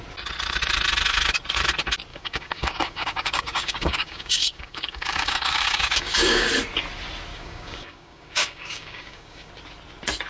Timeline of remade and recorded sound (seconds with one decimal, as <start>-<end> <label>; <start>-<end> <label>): 0.0-2.1 recorded; 2.1-6.5 remade; 6.5-7.3 recorded; 7.3-9.5 remade; 9.5-10.3 recorded